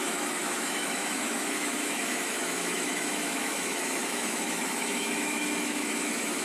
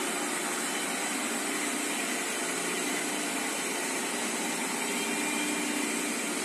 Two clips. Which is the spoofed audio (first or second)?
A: first